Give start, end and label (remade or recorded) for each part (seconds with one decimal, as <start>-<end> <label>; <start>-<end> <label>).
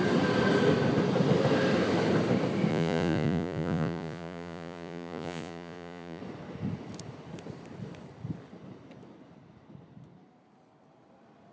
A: 0.0-2.7 recorded; 2.7-6.2 remade; 6.2-11.5 recorded